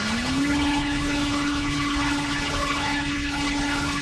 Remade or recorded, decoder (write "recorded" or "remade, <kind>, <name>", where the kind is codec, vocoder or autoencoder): remade, codec, HILCodec